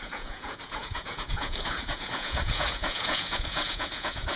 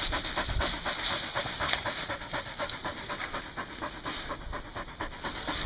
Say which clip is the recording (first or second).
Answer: second